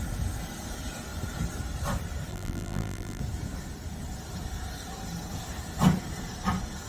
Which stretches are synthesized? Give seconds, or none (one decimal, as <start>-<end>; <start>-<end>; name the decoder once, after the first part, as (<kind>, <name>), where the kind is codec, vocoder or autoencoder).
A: 2.3-3.2 (vocoder, BigVGAN v2)